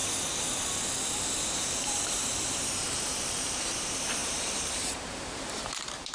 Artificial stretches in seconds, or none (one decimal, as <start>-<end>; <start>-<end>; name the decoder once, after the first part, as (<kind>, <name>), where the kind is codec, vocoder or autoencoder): 2.8-6.1 (vocoder, BigVGAN v2)